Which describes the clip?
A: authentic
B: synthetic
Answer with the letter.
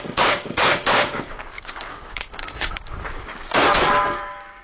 B